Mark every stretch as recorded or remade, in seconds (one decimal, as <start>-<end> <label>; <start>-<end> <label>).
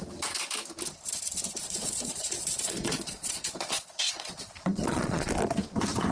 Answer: 0.0-1.6 recorded; 1.6-5.3 remade; 5.3-6.1 recorded